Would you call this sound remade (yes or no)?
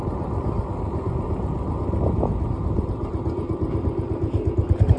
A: no